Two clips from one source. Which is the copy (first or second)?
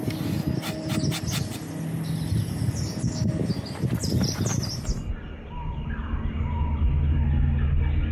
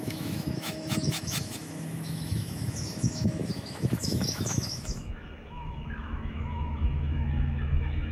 second